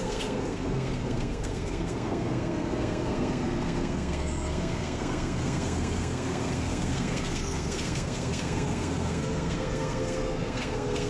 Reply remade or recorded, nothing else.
remade